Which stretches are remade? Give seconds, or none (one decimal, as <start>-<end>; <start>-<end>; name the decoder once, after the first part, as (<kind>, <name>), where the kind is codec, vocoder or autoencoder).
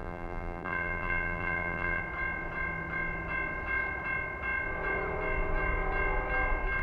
0.0-2.0 (vocoder, BigVGAN v2)